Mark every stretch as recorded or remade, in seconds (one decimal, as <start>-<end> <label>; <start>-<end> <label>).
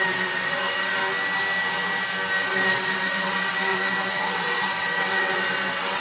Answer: 0.0-1.0 remade; 1.0-2.4 recorded; 2.4-6.0 remade